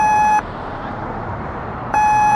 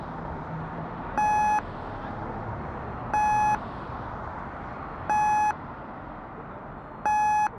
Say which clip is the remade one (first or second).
first